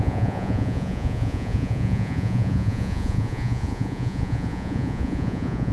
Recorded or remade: remade